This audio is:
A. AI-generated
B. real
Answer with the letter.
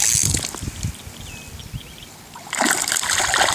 B